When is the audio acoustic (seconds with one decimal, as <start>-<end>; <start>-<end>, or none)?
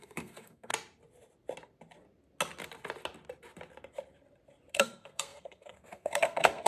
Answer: 0.7-4.7